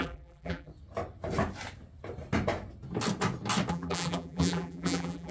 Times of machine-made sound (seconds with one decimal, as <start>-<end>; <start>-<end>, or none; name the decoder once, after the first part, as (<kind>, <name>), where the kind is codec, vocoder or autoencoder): 0.0-0.7 (vocoder, BigVGAN v2); 3.7-5.3